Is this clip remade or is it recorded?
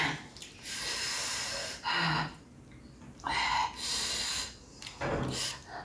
recorded